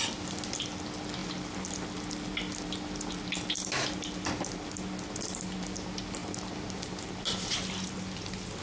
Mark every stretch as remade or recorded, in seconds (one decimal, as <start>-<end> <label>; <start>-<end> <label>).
0.0-8.6 recorded